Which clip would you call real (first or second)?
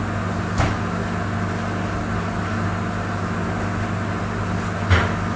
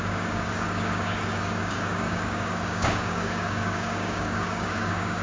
first